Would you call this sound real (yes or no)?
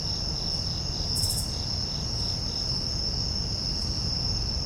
yes